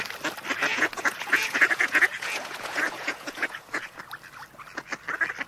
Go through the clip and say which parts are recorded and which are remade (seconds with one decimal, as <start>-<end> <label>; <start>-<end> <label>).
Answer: 0.0-0.7 recorded; 0.7-4.0 remade; 4.0-5.5 recorded